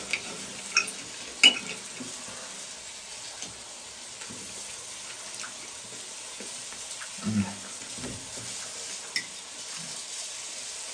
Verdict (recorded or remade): recorded